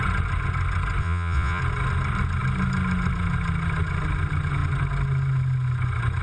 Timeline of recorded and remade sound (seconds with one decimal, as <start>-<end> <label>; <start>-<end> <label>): 0.0-1.0 recorded; 1.0-1.6 remade; 1.6-6.2 recorded